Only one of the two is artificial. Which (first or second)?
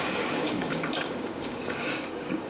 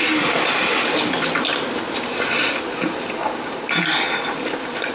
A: first